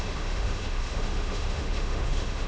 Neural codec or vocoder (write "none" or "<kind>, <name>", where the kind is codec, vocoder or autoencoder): autoencoder, DAC-VAE